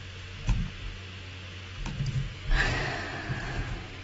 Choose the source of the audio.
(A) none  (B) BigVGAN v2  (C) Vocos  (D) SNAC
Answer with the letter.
A